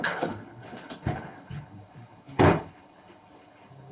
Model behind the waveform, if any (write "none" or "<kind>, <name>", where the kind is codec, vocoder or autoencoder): codec, HILCodec